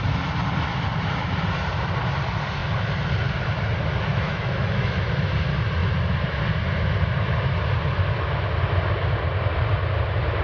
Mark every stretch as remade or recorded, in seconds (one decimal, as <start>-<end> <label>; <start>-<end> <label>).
0.0-4.1 recorded; 4.1-5.0 remade; 5.0-10.4 recorded